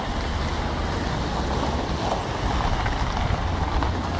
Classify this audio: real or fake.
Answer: real